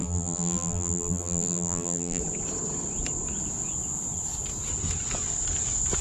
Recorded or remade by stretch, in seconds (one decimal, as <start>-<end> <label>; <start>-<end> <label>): 0.0-2.2 remade; 2.2-6.0 recorded